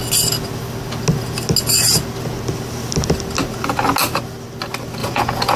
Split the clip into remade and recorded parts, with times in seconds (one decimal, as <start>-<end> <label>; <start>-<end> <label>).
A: 0.0-5.0 recorded; 5.0-5.6 remade